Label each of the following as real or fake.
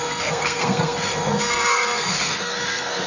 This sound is fake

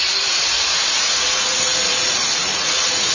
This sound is fake